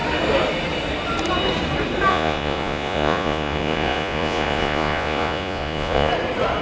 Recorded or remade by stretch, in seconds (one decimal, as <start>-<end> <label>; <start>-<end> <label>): 0.0-2.1 recorded; 2.1-6.1 remade; 6.1-6.6 recorded